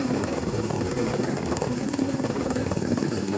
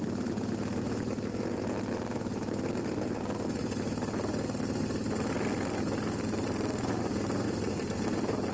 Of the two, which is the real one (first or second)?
second